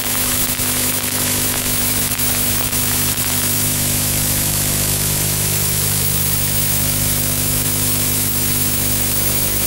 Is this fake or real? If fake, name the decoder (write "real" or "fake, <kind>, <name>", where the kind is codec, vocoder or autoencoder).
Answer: fake, autoencoder, DAC-VAE